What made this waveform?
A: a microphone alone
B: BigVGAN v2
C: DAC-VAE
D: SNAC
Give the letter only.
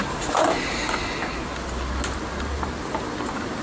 A